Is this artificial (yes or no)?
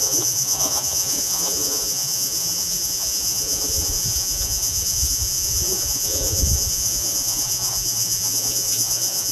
yes